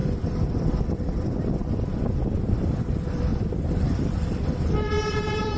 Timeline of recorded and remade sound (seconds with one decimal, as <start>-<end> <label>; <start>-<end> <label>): 0.0-5.6 remade

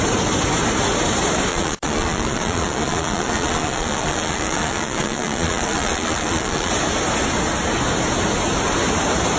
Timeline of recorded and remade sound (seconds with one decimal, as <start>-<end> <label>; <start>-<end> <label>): 0.0-1.5 recorded; 1.5-6.7 remade; 6.7-9.4 recorded

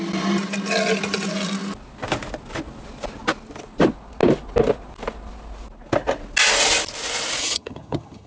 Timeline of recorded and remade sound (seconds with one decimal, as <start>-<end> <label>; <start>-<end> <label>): 0.0-7.4 recorded; 7.4-8.3 remade

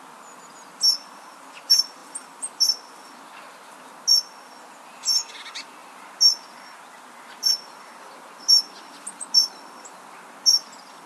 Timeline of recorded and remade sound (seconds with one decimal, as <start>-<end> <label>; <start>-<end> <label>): 0.0-11.1 recorded

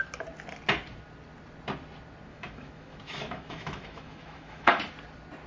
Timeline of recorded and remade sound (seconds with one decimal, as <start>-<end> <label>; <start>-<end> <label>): 0.0-2.3 recorded; 2.3-4.8 remade; 4.8-5.5 recorded

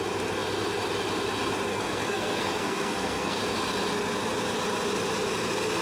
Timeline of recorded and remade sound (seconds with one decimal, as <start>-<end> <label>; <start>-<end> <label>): 0.0-1.7 recorded; 1.7-3.4 remade; 3.4-5.8 recorded

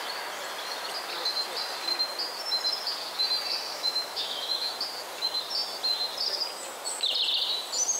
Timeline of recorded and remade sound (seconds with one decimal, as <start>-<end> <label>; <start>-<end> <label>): 0.0-3.7 recorded; 3.7-4.7 remade; 4.7-8.0 recorded

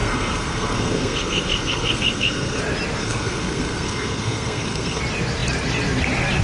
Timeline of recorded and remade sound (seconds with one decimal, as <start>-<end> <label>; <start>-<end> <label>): 0.0-2.6 remade; 2.6-3.0 recorded; 3.0-5.0 remade; 5.0-6.4 recorded